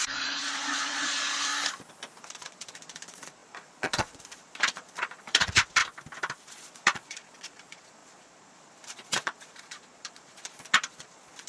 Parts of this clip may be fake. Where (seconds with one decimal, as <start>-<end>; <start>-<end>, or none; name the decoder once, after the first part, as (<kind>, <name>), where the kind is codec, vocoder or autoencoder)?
0.0-1.5 (vocoder, Vocos); 2.2-5.8; 6.5-11.5